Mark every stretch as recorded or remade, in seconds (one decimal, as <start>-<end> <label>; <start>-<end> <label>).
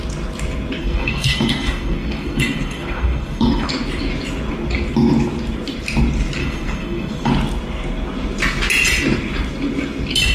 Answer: 0.0-0.8 recorded; 0.8-3.7 remade; 3.7-6.4 recorded; 6.4-7.3 remade; 7.3-10.3 recorded